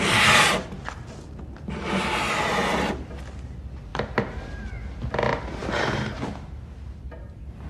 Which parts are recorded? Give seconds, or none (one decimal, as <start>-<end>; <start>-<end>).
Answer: 0.0-3.9; 4.6-7.7